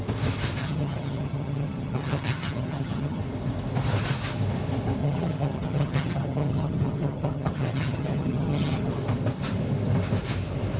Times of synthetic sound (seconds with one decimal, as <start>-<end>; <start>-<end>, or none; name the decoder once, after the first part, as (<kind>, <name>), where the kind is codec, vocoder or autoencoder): 0.6-3.2 (vocoder, HiFi-GAN); 5.0-8.9